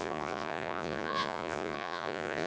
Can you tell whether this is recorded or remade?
remade